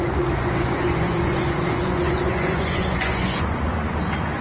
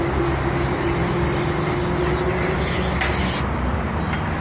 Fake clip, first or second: first